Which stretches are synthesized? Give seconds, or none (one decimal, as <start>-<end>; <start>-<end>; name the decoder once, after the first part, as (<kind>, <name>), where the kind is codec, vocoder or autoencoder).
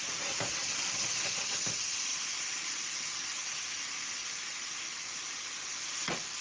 2.1-3.0 (vocoder, BigVGAN v2); 4.2-5.9